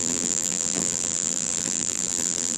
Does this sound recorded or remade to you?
remade